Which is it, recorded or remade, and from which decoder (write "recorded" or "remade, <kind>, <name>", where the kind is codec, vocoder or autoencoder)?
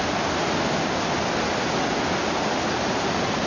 recorded